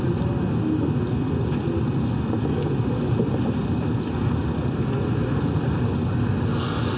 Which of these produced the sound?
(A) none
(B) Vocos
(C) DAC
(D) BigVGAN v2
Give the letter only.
A